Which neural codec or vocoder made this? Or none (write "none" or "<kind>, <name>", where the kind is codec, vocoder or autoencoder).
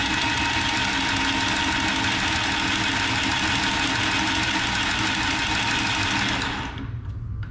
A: none